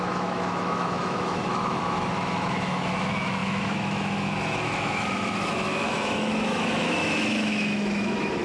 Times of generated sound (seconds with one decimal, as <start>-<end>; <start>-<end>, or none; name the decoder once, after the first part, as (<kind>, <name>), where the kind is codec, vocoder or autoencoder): 0.0-8.4 (autoencoder, DAC-VAE)